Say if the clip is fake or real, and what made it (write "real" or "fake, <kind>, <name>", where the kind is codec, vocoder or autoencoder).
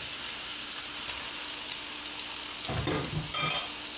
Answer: real